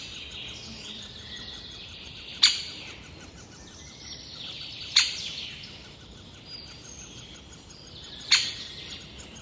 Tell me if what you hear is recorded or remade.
recorded